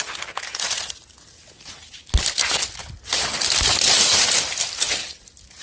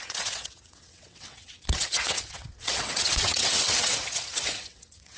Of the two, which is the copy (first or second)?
second